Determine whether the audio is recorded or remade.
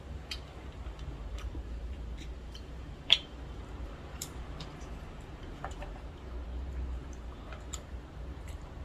remade